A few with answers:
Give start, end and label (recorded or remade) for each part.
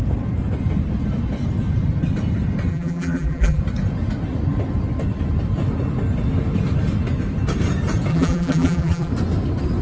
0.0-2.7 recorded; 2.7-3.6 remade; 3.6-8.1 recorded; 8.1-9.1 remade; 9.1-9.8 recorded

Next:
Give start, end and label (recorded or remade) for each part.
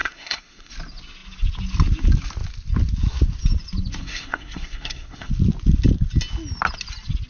0.0-0.7 remade; 0.7-4.0 recorded; 4.0-5.3 remade; 5.3-7.3 recorded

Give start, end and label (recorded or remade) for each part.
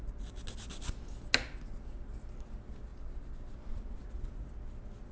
0.0-5.1 recorded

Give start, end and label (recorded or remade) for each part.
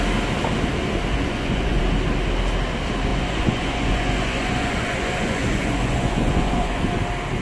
0.0-1.1 recorded; 1.1-1.8 remade; 1.8-3.1 recorded; 3.1-7.0 remade; 7.0-7.4 recorded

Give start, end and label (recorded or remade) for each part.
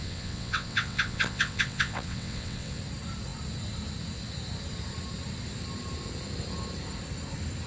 0.0-2.8 remade; 2.8-7.7 recorded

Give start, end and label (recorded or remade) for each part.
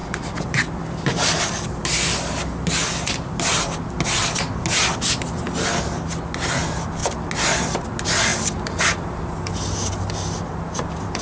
0.0-3.6 remade; 3.6-8.3 recorded; 8.3-11.2 remade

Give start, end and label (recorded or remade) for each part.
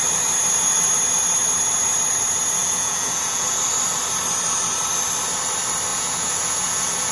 0.0-2.6 recorded; 2.6-3.6 remade; 3.6-5.9 recorded; 5.9-7.1 remade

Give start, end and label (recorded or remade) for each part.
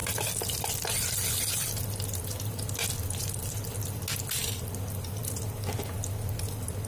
0.0-3.4 recorded; 3.4-3.9 remade; 3.9-4.4 recorded; 4.4-5.3 remade; 5.3-6.9 recorded